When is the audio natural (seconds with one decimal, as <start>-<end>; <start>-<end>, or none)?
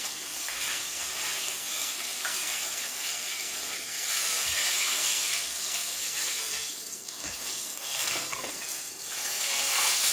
none